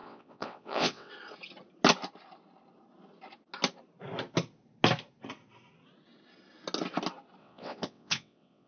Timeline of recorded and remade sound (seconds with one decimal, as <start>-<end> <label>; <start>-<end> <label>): 0.0-1.1 remade; 1.1-7.4 recorded; 7.4-8.7 remade